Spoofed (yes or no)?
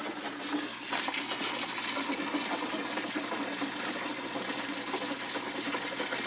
no